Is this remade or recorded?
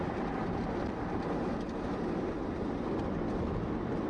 recorded